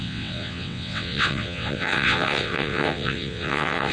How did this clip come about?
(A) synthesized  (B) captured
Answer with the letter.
A